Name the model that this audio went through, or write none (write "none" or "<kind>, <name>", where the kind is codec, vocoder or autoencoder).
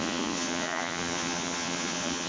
vocoder, Vocos